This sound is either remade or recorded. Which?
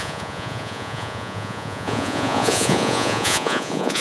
remade